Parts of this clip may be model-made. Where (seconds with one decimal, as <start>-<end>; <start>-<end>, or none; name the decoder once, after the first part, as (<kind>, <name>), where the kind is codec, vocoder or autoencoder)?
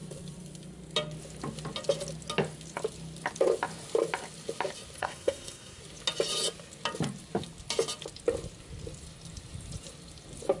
5.0-5.8 (codec, SNAC)